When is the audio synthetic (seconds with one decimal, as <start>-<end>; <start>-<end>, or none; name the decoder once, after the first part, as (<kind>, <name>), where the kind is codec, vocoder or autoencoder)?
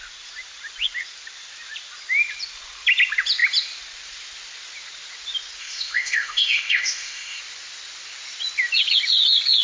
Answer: 5.6-7.4 (codec, ZipCodec)